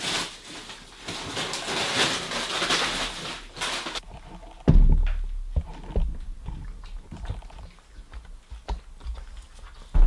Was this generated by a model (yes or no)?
no